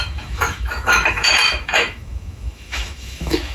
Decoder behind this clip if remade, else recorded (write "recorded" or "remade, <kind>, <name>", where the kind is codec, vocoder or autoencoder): remade, autoencoder, DAC-VAE